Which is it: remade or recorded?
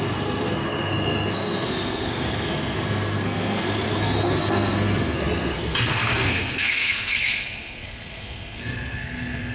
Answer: remade